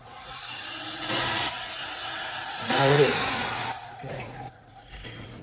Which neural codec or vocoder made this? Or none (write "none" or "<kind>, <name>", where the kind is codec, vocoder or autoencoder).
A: vocoder, Vocos